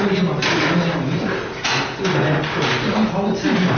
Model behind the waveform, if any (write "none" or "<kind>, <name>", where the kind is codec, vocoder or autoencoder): none